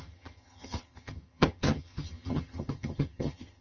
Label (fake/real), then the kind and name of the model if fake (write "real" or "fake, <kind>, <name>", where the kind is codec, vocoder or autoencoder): fake, vocoder, HiFi-GAN